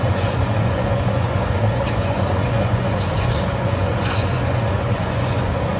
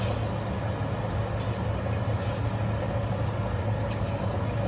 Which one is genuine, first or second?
second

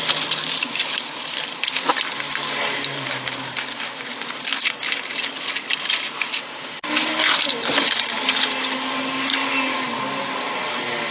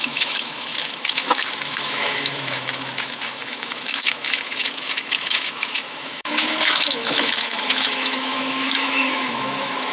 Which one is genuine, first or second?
first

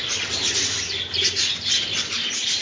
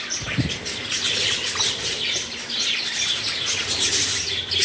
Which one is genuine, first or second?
first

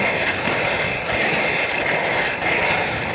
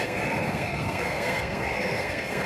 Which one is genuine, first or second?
first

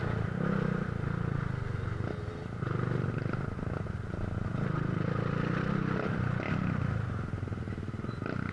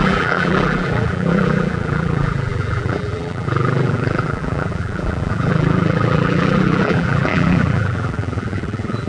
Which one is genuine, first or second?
first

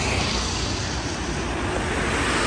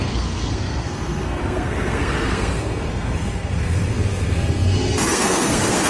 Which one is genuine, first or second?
first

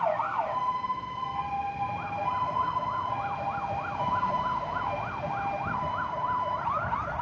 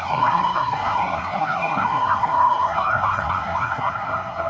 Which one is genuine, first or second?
first